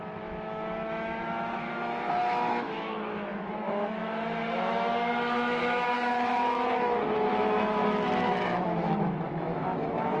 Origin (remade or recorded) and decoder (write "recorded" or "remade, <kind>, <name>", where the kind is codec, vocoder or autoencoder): remade, autoencoder, DAC-VAE